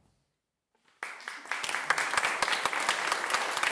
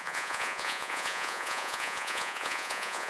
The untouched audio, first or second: first